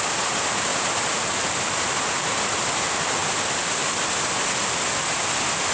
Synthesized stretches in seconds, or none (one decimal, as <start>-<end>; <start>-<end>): 0.7-2.7